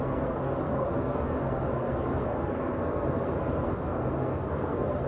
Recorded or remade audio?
remade